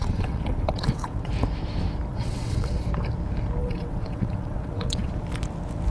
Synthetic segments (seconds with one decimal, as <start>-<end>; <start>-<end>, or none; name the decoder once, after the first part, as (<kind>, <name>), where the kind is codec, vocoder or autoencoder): 0.0-1.3 (vocoder, WaveNeXt); 2.1-2.8; 3.6-5.1

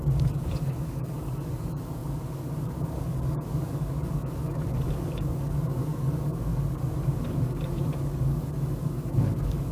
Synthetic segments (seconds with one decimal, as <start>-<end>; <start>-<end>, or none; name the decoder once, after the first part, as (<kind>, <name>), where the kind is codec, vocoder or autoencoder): 0.0-9.7 (codec, DAC)

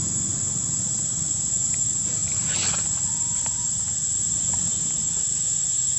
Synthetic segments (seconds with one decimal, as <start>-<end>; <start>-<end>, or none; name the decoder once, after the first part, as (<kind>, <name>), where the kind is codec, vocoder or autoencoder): none

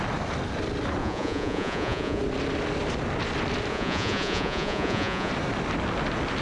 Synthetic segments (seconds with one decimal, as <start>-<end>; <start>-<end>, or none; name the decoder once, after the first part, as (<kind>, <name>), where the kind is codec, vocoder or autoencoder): 1.0-2.2 (vocoder, Vocos); 3.7-5.3

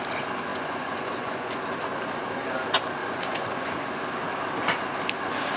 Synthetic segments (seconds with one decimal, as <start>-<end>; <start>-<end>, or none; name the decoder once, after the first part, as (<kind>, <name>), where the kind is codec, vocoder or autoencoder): 0.5-1.5 (vocoder, Vocos); 3.0-4.0

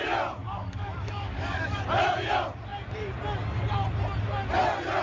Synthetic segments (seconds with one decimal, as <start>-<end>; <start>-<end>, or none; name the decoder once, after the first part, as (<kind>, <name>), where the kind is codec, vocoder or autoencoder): 0.4-1.8 (codec, DAC)

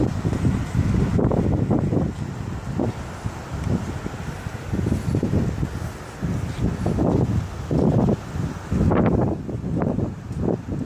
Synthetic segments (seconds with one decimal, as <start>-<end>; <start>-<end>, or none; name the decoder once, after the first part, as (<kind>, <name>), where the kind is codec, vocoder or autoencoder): none

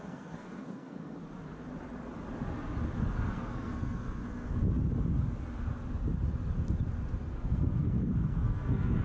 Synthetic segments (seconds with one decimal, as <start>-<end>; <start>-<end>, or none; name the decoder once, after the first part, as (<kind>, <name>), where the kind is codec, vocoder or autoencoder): 0.0-1.2 (codec, SNAC); 3.3-4.6; 7.3-9.0